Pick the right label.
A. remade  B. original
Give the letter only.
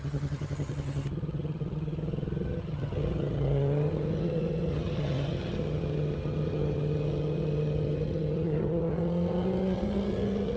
A